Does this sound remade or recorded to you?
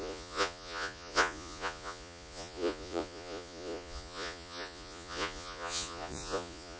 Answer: remade